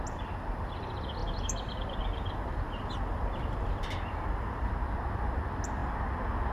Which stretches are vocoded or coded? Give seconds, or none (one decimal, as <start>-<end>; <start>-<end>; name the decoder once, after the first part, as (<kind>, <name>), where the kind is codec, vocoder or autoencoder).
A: 1.2-4.7 (vocoder, BigVGAN v2)